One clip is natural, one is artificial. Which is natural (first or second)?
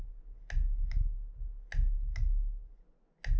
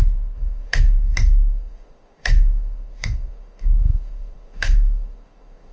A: first